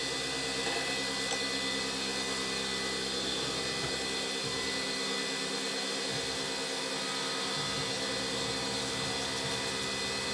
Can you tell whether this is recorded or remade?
recorded